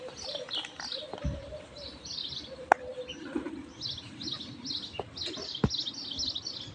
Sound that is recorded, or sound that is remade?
recorded